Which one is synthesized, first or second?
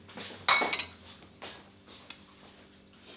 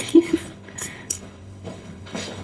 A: second